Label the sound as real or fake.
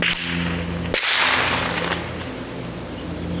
real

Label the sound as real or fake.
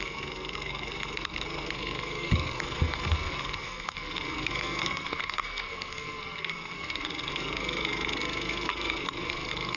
fake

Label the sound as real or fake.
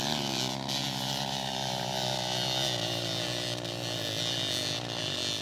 real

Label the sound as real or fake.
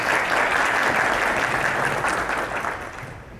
real